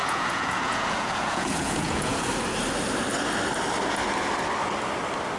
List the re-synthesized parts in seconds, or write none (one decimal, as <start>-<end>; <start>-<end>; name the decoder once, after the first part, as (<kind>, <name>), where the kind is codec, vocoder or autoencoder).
0.0-2.3 (vocoder, Vocos)